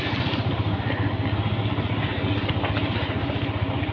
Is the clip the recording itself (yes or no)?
yes